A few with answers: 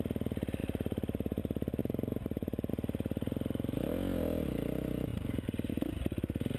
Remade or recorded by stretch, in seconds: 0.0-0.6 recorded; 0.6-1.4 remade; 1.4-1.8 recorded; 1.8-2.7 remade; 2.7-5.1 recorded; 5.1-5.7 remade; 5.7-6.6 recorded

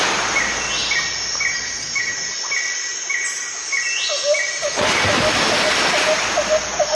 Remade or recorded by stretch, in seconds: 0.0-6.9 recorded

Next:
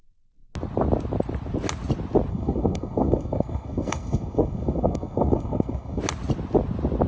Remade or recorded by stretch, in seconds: 0.0-2.3 recorded; 2.3-6.0 remade; 6.0-7.1 recorded